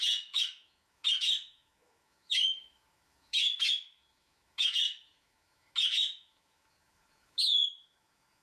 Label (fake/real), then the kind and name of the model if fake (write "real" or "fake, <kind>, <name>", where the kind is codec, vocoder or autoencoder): fake, autoencoder, DAC-VAE